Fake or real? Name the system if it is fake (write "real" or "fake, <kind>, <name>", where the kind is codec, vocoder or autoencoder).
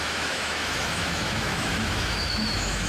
fake, autoencoder, DAC-VAE